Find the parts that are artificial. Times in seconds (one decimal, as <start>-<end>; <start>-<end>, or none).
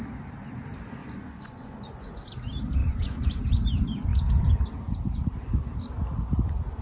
1.0-2.1; 2.8-3.3